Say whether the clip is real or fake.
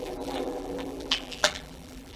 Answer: fake